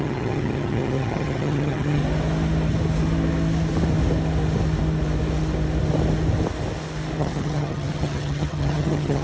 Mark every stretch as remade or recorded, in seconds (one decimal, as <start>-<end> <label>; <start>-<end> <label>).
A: 0.0-2.0 remade; 2.0-7.2 recorded; 7.2-9.2 remade